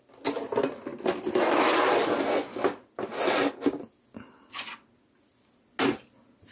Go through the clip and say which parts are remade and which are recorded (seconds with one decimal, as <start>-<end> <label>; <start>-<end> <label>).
0.0-6.5 recorded